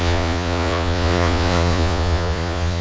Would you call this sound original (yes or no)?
no